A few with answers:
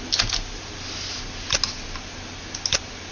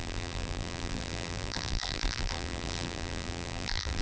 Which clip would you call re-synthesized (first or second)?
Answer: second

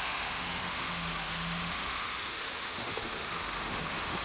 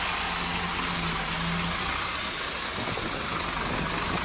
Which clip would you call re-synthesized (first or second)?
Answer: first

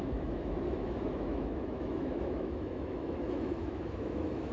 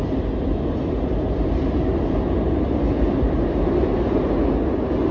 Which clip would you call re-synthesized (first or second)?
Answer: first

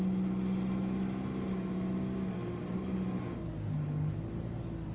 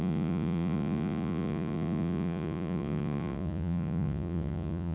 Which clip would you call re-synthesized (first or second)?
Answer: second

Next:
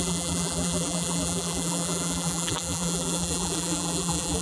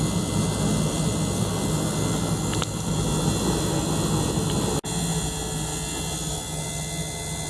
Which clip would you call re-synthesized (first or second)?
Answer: first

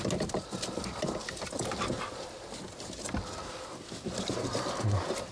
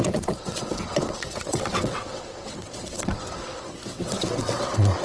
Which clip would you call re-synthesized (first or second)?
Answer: second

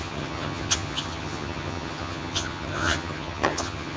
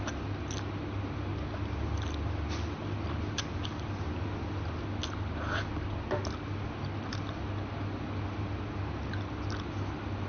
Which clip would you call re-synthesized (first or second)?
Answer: first